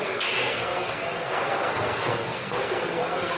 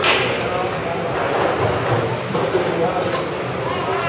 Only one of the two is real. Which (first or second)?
second